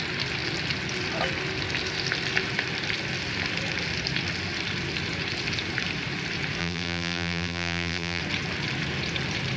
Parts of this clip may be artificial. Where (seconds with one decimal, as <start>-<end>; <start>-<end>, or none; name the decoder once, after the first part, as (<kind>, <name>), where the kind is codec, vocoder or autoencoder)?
6.6-8.2 (vocoder, BigVGAN v2)